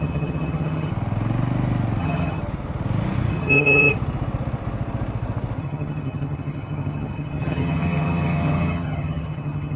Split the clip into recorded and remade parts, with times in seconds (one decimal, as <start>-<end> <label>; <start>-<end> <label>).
0.0-0.9 remade; 0.9-2.0 recorded; 2.0-2.4 remade; 2.4-3.3 recorded; 3.3-3.9 remade; 3.9-5.6 recorded; 5.6-9.8 remade